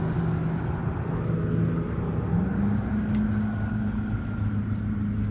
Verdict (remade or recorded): recorded